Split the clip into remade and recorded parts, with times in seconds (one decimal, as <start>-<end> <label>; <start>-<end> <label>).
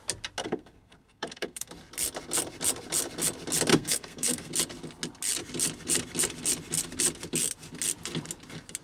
0.0-0.4 recorded; 0.4-1.7 remade; 1.7-3.7 recorded; 3.7-4.5 remade; 4.5-8.8 recorded